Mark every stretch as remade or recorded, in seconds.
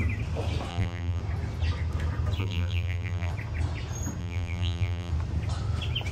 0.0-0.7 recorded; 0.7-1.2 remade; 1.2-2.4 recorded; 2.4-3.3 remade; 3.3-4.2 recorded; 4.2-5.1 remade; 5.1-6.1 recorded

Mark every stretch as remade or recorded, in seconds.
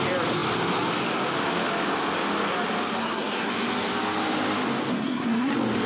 0.0-3.0 recorded; 3.0-3.5 remade; 3.5-4.9 recorded; 4.9-5.5 remade; 5.5-5.9 recorded